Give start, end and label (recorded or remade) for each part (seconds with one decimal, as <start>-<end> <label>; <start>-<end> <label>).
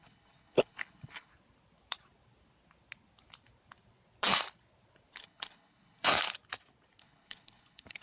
0.0-1.3 remade; 1.3-5.2 recorded; 5.2-6.1 remade; 6.1-7.0 recorded; 7.0-8.0 remade